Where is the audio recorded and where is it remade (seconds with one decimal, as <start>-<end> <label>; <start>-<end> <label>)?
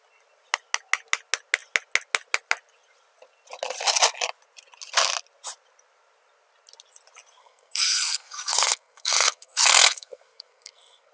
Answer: 0.0-7.4 recorded; 7.4-11.1 remade